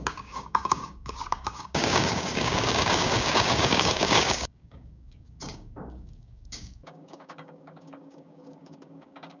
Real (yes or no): no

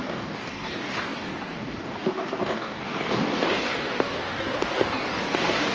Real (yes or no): no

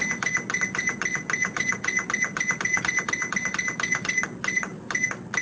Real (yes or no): yes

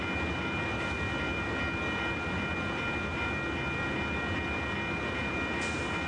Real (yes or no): yes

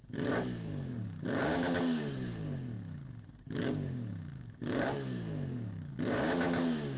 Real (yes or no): no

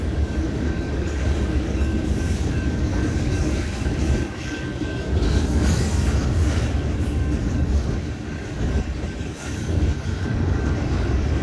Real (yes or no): no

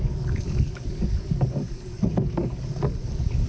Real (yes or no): no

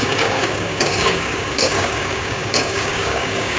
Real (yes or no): no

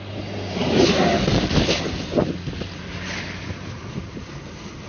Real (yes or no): yes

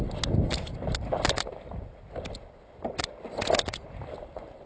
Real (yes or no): yes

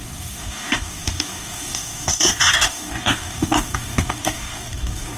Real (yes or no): no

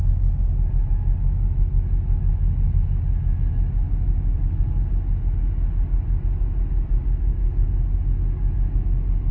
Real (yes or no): yes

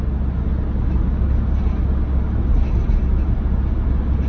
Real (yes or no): yes